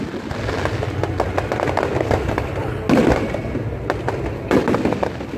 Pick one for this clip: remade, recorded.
recorded